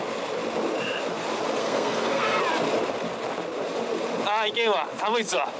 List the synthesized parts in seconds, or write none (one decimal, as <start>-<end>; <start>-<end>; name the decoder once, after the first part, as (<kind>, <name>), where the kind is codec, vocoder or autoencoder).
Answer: 1.6-2.4 (codec, SNAC)